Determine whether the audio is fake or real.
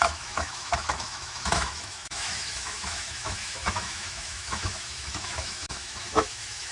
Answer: fake